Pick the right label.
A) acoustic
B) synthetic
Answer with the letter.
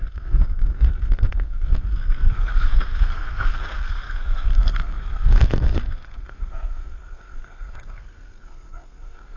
B